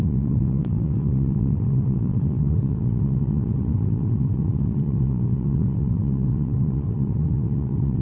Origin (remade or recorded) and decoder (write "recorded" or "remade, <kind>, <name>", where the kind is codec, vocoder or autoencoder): remade, vocoder, WaveNeXt